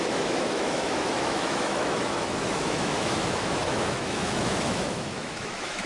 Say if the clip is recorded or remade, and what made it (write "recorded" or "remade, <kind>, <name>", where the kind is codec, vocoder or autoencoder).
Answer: remade, autoencoder, DAC-VAE